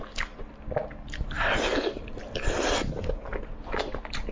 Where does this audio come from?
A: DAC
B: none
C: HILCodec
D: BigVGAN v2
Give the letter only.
B